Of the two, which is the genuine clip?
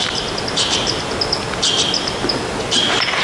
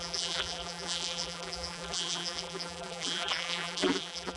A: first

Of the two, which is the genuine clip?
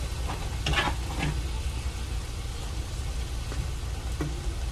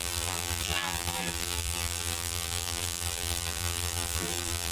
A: first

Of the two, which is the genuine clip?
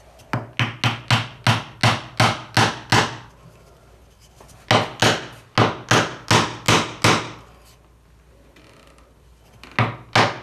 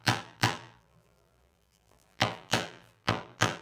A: first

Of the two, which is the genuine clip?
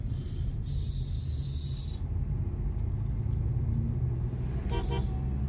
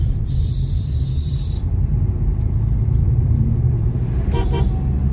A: first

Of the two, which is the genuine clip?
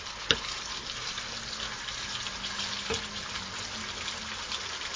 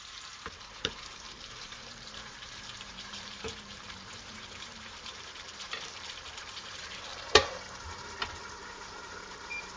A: first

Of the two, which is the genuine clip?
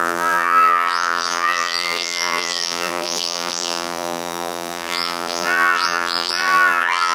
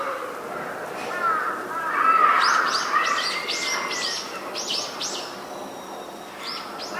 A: second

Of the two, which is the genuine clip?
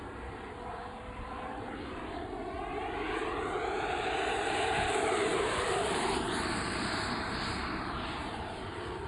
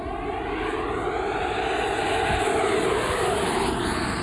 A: second